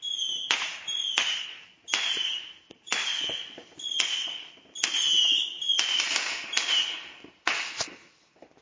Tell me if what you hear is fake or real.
real